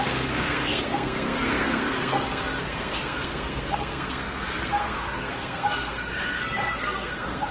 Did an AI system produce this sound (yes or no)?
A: yes